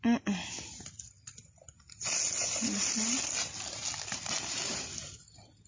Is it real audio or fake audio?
real